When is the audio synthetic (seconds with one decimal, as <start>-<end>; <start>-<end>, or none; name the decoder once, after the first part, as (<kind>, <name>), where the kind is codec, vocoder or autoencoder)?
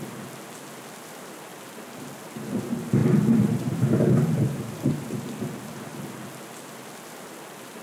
3.0-5.4 (vocoder, BigVGAN v2)